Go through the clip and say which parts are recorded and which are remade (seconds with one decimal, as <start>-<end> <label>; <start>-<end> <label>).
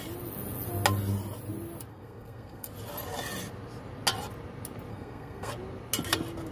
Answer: 0.0-1.9 recorded; 1.9-2.7 remade; 2.7-4.9 recorded; 4.9-5.5 remade; 5.5-6.5 recorded